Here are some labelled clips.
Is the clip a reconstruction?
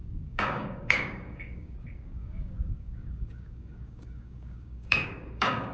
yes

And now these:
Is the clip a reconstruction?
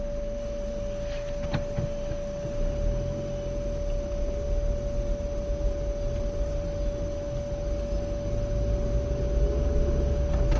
no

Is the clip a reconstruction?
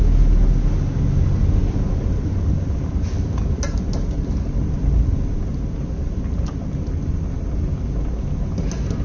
no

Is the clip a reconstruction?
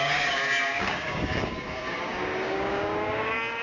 yes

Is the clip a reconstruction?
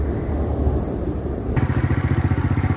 no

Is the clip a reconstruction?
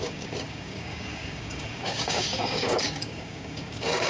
yes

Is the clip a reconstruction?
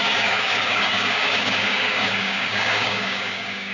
yes